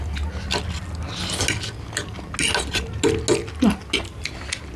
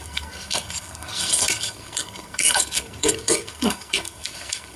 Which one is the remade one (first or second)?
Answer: second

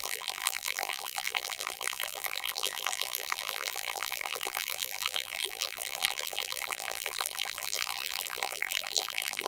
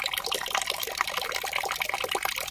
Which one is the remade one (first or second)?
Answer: first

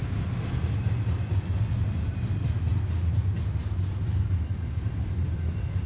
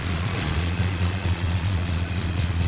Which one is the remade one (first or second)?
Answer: second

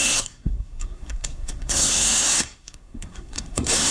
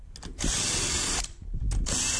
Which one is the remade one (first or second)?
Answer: first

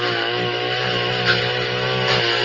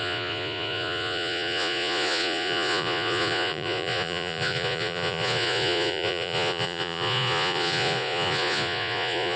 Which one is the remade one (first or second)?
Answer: second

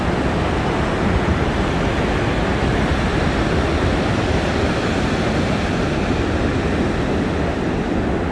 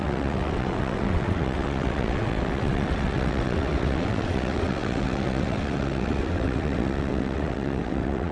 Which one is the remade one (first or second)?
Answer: second